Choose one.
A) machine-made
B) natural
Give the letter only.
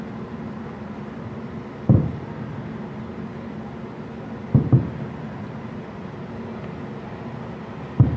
B